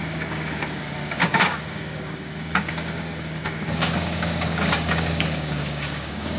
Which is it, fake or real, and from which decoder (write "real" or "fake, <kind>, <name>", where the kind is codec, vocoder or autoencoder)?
fake, codec, DAC